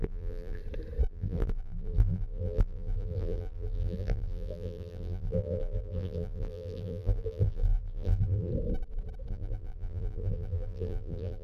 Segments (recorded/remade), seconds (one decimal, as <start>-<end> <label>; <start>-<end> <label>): 0.0-0.6 remade; 0.6-1.1 recorded; 1.1-8.5 remade; 8.5-9.3 recorded; 9.3-11.4 remade